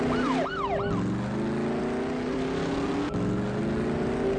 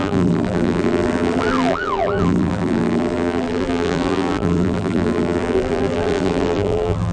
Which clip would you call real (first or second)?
first